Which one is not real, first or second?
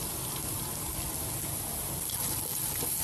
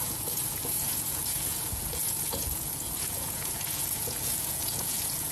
second